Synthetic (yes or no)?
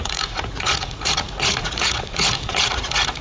yes